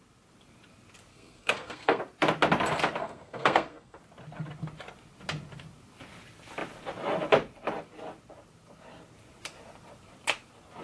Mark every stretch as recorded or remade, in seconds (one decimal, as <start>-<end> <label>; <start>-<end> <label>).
0.0-1.1 recorded; 1.1-2.0 remade; 2.0-3.0 recorded; 3.0-4.0 remade; 4.0-10.8 recorded